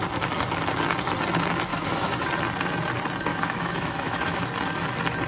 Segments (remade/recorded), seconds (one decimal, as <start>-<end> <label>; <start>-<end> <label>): 0.0-1.7 recorded; 1.7-2.3 remade; 2.3-3.3 recorded; 3.3-4.4 remade; 4.4-5.3 recorded